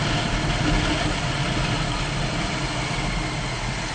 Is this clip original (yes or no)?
yes